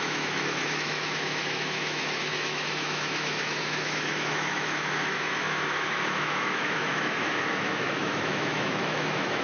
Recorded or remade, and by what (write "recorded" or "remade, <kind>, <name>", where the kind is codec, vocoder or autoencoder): remade, autoencoder, DAC-VAE